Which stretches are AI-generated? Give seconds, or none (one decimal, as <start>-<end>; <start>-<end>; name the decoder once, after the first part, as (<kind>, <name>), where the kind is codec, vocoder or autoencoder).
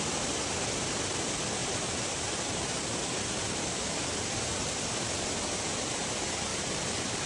1.6-3.9 (vocoder, BigVGAN v2); 6.5-7.3